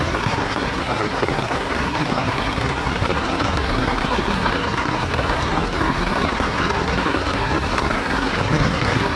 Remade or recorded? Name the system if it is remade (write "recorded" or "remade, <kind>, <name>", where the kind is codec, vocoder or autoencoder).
remade, codec, SNAC